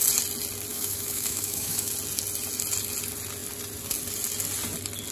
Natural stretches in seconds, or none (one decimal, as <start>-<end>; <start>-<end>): 0.0-0.7; 1.9-5.1